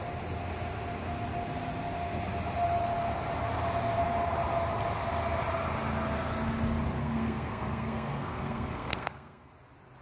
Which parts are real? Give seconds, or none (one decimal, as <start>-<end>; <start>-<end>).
0.0-7.0; 9.5-10.0